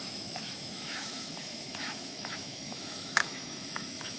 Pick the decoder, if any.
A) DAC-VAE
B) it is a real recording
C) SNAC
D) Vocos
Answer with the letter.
A